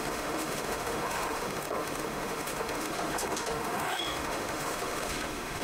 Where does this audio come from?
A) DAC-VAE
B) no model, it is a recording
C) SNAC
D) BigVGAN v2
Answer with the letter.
A